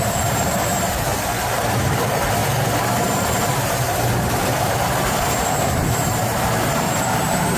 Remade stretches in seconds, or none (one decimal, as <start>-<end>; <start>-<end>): 0.0-2.4; 3.0-7.6